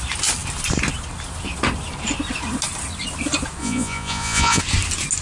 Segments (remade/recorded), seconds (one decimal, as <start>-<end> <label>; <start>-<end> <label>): 0.0-3.6 recorded; 3.6-4.6 remade; 4.6-5.2 recorded